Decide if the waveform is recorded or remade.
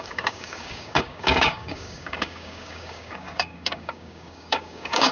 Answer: remade